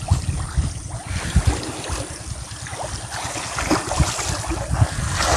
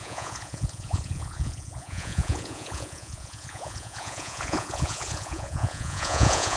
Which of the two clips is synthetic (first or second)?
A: second